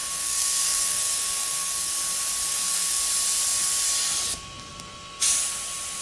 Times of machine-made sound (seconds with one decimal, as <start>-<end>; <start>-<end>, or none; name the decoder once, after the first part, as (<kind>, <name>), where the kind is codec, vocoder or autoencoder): 0.0-1.9 (codec, SNAC); 2.5-3.0